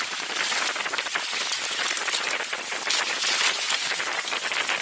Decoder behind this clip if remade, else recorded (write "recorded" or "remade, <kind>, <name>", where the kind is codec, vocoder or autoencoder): remade, vocoder, BigVGAN v2